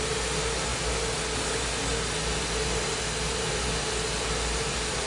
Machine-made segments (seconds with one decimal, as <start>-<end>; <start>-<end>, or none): none